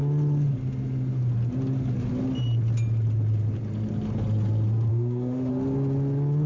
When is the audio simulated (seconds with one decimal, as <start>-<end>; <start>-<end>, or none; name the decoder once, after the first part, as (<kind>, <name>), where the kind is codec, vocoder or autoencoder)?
4.9-5.5 (autoencoder, DAC-VAE)